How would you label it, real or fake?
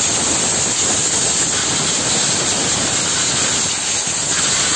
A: real